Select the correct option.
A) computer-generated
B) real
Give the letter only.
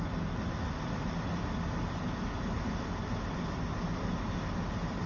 B